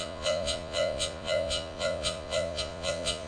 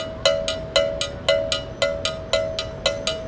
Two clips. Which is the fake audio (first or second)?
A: first